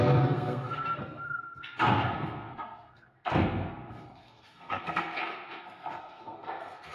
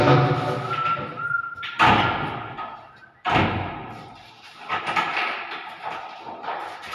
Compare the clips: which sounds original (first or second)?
second